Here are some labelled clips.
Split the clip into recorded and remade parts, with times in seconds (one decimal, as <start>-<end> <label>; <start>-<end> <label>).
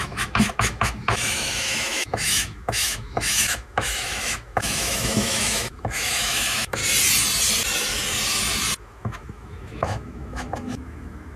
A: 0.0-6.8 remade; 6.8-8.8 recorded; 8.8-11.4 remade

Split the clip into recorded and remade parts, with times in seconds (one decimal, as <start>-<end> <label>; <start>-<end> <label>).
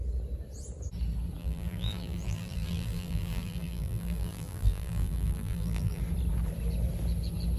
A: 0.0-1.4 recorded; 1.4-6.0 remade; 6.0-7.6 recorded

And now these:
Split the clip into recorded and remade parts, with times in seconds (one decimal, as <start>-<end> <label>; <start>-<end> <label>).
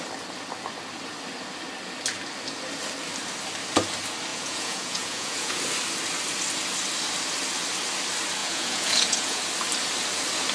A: 0.0-4.3 recorded; 4.3-5.6 remade; 5.6-8.4 recorded; 8.4-9.4 remade; 9.4-10.5 recorded